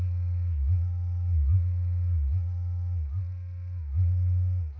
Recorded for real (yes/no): yes